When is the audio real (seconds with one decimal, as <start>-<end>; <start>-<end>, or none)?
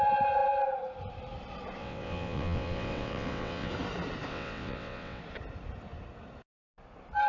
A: 0.0-1.8; 3.7-4.3; 5.2-7.3